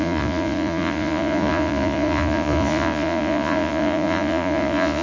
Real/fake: fake